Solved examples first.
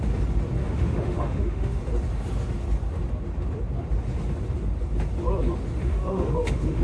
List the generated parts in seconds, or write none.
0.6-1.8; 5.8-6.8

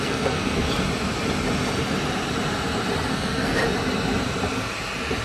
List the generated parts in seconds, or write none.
0.0-0.7; 3.1-3.6

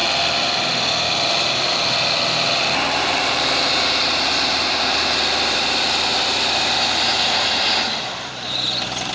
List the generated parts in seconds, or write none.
3.0-9.1

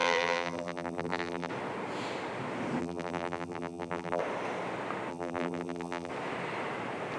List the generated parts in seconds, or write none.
0.0-1.5; 2.8-4.2; 5.1-6.1